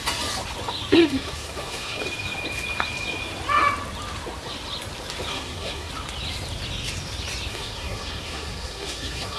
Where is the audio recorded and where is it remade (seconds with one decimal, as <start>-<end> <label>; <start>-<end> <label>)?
0.0-1.0 recorded; 1.0-2.0 remade; 2.0-5.3 recorded; 5.3-5.9 remade; 5.9-7.5 recorded; 7.5-9.4 remade